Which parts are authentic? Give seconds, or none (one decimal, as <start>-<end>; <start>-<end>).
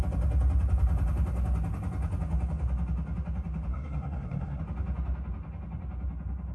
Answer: 0.0-3.7; 4.6-6.5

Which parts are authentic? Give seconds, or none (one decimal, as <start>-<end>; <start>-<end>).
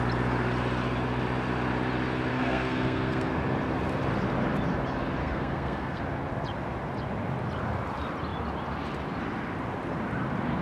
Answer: 0.0-2.3; 3.3-5.2; 6.0-10.6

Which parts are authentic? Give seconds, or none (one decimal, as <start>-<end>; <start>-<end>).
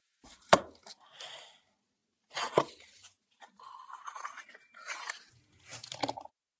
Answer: 0.0-6.6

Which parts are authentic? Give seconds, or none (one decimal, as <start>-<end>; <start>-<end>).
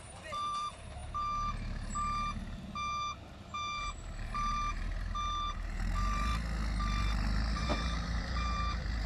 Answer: 1.0-3.2; 6.3-7.0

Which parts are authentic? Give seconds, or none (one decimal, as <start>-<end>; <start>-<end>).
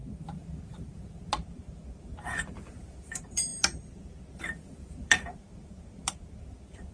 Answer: none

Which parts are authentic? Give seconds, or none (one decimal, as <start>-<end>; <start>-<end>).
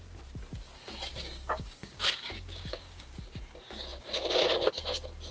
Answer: 0.0-1.1; 3.2-5.3